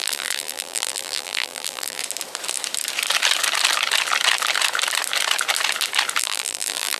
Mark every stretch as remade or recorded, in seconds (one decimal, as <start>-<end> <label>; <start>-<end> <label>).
0.0-2.0 remade; 2.0-6.2 recorded; 6.2-7.0 remade